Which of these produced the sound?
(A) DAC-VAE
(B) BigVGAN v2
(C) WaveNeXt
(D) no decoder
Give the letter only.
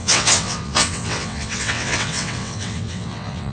C